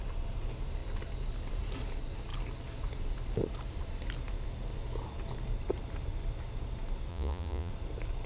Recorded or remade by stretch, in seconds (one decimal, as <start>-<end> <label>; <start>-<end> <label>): 0.0-7.1 recorded; 7.1-7.7 remade; 7.7-8.3 recorded